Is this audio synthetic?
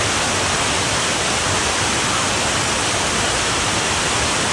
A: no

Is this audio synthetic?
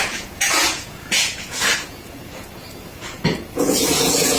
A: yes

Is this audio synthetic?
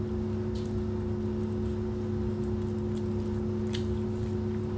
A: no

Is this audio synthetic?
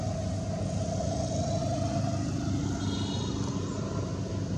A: no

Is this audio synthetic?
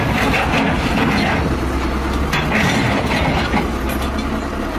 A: no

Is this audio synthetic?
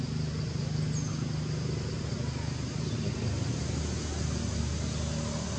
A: no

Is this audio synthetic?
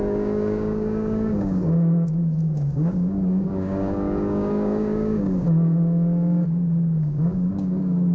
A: yes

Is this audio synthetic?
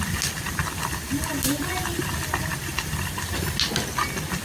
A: no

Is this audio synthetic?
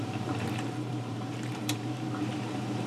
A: yes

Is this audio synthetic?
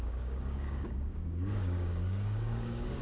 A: yes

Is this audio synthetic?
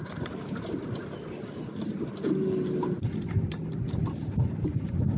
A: no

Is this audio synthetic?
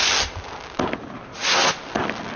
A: no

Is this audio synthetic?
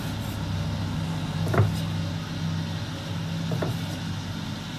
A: no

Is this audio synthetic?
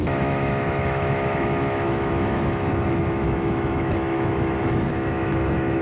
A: yes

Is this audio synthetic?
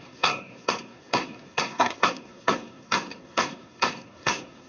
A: yes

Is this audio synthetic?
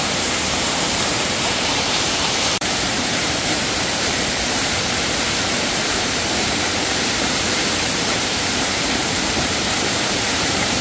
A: yes